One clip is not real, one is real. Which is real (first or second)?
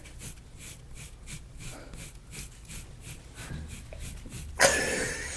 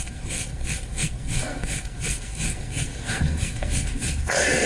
first